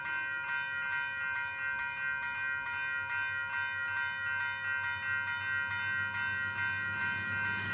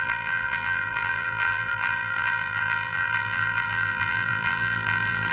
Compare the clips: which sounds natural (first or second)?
first